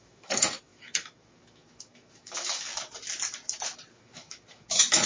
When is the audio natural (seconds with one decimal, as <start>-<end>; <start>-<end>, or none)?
2.7-3.9

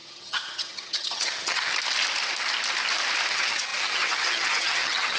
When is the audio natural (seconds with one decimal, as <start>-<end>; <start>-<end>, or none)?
1.7-3.3

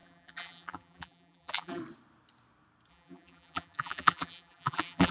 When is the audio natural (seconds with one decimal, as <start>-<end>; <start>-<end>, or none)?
1.8-2.9

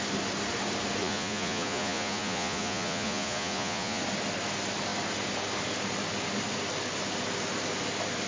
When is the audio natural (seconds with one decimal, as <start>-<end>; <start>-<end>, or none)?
0.0-1.0; 4.0-8.3

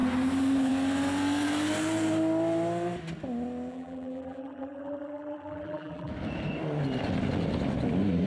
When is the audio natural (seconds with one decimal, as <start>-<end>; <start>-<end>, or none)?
0.0-3.7; 6.1-8.3

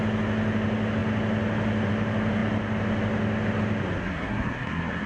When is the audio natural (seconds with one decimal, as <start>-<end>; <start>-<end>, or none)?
0.0-4.0